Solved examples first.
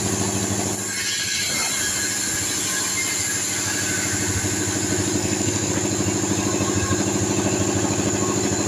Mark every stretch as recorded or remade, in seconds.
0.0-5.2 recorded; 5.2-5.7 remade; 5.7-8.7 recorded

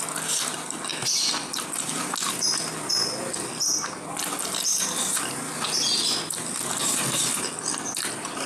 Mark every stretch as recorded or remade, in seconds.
0.0-8.5 recorded

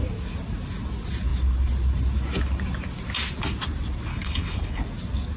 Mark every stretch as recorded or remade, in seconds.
0.0-4.1 recorded; 4.1-4.8 remade; 4.8-5.4 recorded

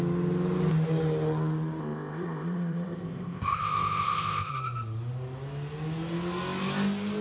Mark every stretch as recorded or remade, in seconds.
0.0-1.8 recorded; 1.8-4.5 remade; 4.5-7.2 recorded

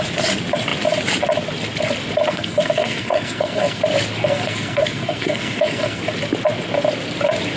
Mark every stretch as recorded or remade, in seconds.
0.0-2.3 recorded; 2.3-3.8 remade; 3.8-4.2 recorded; 4.2-6.0 remade; 6.0-7.6 recorded

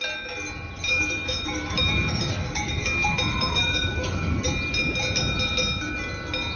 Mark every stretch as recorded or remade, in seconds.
0.0-0.9 recorded; 0.9-4.4 remade; 4.4-6.6 recorded

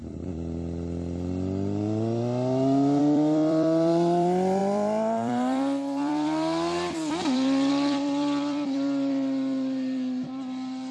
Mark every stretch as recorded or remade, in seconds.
0.0-3.0 recorded; 3.0-10.9 remade